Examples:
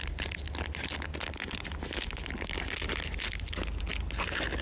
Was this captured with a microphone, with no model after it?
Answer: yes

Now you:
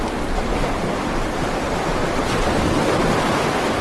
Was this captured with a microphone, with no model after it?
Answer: yes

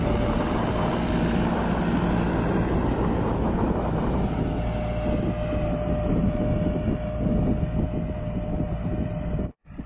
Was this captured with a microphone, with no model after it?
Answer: yes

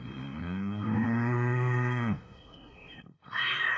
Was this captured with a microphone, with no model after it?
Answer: no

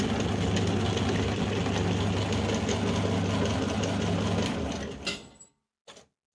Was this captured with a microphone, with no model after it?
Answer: yes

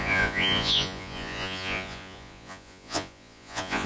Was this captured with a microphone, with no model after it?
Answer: no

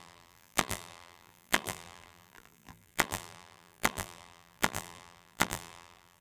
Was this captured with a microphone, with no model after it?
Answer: no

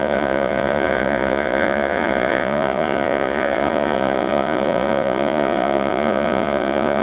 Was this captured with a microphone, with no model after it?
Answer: no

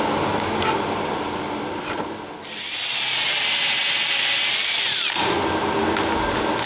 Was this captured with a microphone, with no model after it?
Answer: yes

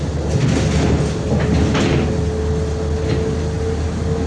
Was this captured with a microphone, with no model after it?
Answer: yes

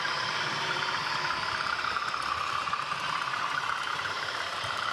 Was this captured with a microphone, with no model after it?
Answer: no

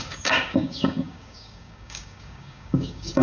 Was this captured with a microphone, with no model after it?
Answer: no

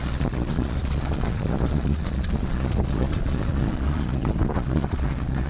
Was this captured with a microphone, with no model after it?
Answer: no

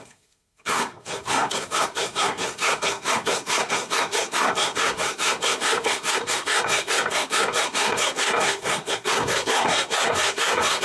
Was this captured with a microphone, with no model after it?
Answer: no